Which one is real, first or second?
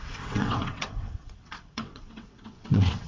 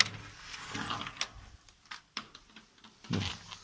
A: second